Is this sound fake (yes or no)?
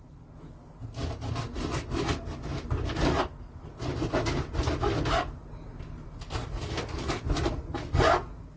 no